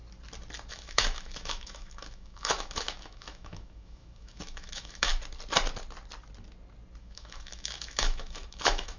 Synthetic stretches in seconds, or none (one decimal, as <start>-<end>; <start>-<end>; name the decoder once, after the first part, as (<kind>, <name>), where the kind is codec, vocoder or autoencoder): 0.7-5.1 (autoencoder, DAC-VAE); 7.0-9.0